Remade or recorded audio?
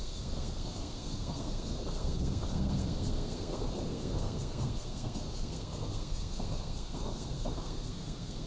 remade